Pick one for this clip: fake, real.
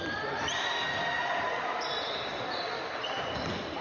real